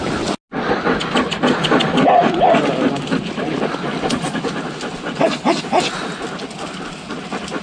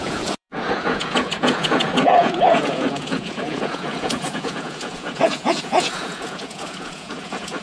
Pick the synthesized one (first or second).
second